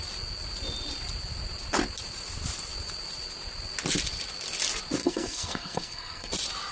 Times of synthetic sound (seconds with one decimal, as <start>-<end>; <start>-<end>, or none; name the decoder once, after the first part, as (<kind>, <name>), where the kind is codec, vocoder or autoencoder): 5.0-6.3 (codec, SNAC)